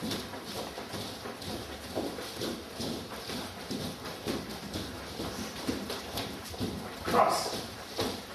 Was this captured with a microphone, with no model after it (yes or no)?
no